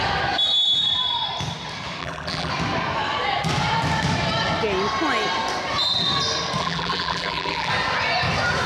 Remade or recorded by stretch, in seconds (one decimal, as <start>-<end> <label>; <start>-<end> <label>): 0.0-2.0 recorded; 2.0-2.5 remade; 2.5-6.6 recorded; 6.6-7.7 remade; 7.7-8.7 recorded

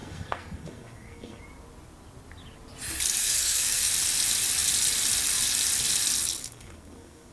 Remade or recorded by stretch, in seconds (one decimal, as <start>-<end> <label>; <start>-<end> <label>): 0.0-1.4 remade; 1.4-3.2 recorded; 3.2-3.9 remade; 3.9-6.4 recorded; 6.4-7.3 remade